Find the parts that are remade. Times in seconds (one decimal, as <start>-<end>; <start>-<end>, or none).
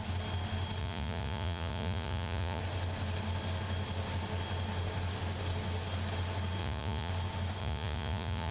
0.8-2.6; 6.6-7.1; 7.6-8.5